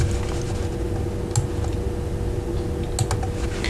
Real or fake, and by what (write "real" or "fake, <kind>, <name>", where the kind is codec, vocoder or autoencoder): real